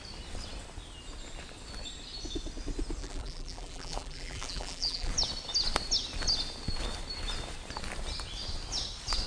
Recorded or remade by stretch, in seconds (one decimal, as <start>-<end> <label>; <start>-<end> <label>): 0.0-3.0 recorded; 3.0-5.1 remade; 5.1-9.3 recorded